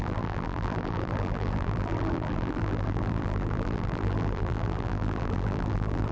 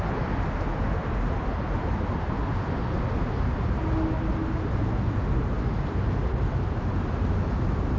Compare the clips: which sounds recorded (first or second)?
second